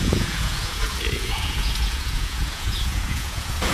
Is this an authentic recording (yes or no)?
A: no